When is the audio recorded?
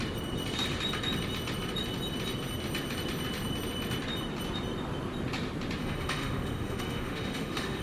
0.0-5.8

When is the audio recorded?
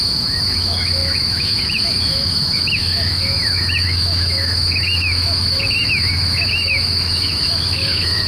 none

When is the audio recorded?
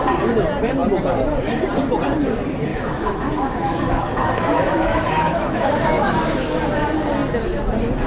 0.0-2.7; 6.6-8.1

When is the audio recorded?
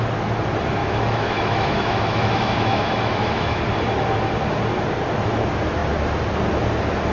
0.0-0.8; 3.6-7.1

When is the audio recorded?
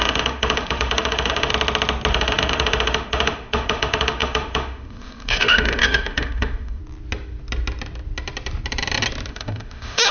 1.5-2.1; 6.8-9.3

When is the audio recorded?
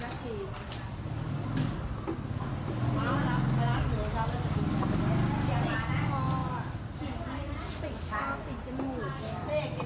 0.0-9.9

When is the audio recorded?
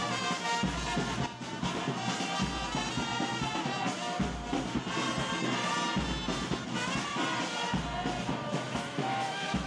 0.0-8.4